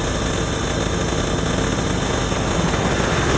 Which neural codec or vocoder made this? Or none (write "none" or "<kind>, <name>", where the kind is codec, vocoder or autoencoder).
none